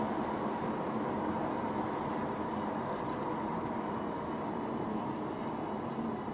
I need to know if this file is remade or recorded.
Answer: recorded